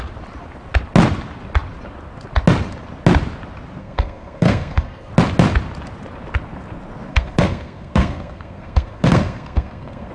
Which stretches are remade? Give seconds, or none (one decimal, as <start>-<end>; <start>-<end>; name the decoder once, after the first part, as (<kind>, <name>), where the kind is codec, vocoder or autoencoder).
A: 3.8-5.1 (codec, SNAC); 7.1-10.1